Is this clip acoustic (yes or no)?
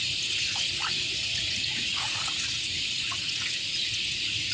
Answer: no